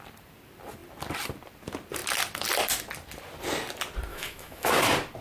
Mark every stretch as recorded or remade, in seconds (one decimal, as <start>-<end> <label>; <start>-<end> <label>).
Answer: 0.0-4.1 recorded; 4.1-4.7 remade; 4.7-5.2 recorded